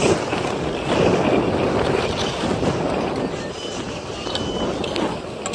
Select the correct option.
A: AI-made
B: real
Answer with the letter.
B